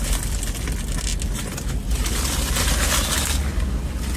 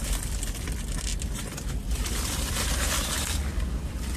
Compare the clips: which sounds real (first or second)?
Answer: first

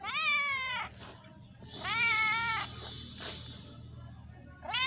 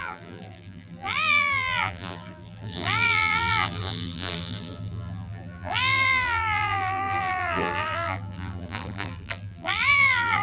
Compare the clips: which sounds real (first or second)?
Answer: first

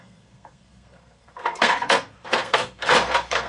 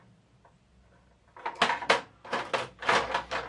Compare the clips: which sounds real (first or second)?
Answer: second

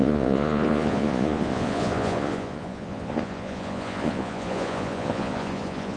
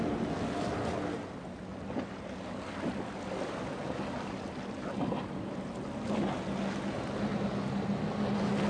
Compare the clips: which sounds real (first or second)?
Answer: second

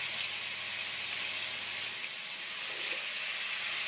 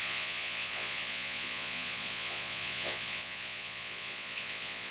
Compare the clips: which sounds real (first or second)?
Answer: first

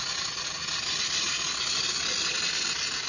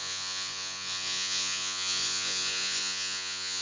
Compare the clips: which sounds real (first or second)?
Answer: first